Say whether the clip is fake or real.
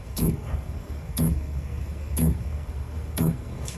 fake